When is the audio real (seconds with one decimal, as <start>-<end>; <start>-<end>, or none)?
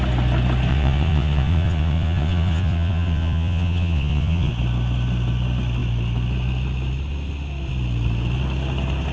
0.0-0.7; 4.5-9.1